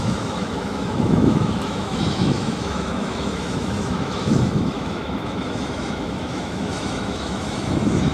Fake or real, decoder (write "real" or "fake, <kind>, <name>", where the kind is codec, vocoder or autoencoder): fake, autoencoder, DAC-VAE